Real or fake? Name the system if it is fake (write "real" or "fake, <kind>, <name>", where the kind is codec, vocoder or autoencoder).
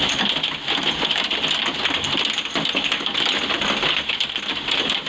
real